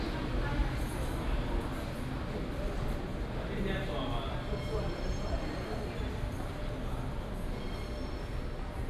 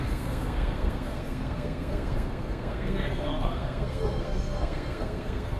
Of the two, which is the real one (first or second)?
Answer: first